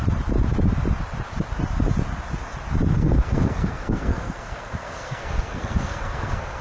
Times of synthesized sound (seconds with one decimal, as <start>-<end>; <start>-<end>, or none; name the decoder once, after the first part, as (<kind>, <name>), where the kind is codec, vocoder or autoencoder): 2.9-6.6 (codec, SNAC)